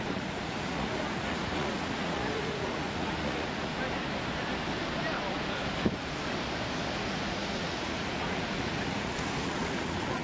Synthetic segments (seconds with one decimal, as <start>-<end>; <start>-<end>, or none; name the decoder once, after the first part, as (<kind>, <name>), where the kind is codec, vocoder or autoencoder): 0.0-3.7 (vocoder, Vocos); 6.9-10.2